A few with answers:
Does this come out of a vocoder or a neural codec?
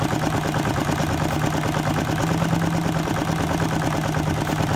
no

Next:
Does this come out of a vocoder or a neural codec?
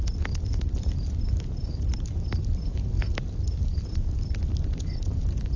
no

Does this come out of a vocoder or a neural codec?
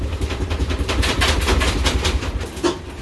yes